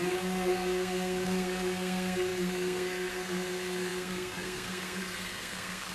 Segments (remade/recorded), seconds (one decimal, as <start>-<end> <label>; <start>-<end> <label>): 0.0-5.9 remade

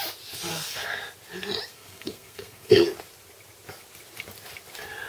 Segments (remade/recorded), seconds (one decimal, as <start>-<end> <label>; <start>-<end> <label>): 0.0-0.5 recorded; 0.5-1.0 remade; 1.0-1.7 recorded; 1.7-2.8 remade; 2.8-5.1 recorded

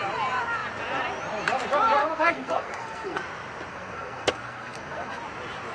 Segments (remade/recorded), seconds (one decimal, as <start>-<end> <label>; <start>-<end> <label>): 0.0-2.0 recorded; 2.0-3.2 remade; 3.2-3.7 recorded; 3.7-5.2 remade; 5.2-5.7 recorded

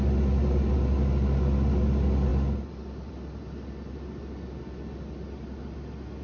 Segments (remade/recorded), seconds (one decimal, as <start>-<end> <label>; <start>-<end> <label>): 0.0-6.2 recorded

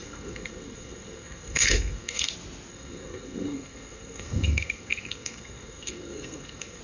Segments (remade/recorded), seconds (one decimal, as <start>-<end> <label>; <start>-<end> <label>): 0.0-2.3 remade; 2.3-2.7 recorded; 2.7-6.8 remade

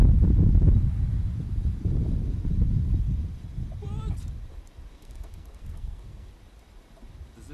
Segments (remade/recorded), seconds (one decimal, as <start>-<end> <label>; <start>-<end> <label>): 0.0-4.9 recorded; 4.9-6.3 remade; 6.3-7.5 recorded